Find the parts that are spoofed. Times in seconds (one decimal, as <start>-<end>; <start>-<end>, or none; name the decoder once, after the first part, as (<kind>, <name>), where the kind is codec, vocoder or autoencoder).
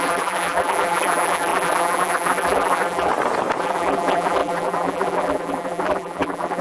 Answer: 0.0-3.1 (vocoder, BigVGAN v2); 3.6-6.6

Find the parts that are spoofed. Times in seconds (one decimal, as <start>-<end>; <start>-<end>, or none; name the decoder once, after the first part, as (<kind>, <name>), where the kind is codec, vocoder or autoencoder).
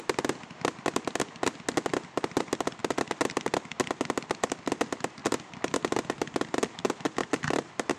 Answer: 7.2-8.0 (vocoder, BigVGAN v2)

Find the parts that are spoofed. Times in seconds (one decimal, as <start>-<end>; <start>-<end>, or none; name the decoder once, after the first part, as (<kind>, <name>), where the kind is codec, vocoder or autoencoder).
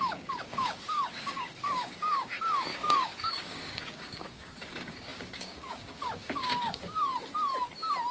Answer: 0.0-7.1 (codec, DAC)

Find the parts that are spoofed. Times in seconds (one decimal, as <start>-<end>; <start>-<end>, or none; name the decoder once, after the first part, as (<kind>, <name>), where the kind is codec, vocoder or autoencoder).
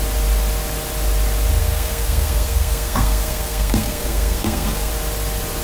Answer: 1.6-4.9 (codec, SNAC)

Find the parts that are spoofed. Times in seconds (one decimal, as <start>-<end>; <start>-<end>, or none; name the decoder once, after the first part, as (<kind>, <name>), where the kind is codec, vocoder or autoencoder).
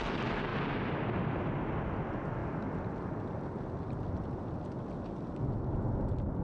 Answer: none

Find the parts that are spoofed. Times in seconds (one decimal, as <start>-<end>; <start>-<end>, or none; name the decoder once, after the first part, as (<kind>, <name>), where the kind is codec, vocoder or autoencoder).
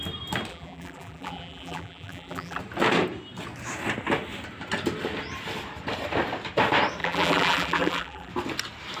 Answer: 0.5-2.6 (vocoder, BigVGAN v2); 7.0-8.3